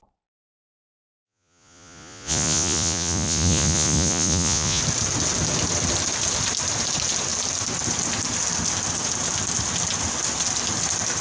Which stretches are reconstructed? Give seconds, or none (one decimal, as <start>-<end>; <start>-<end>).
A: 0.7-4.8